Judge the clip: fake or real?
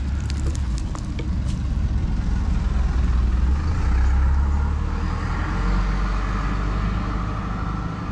real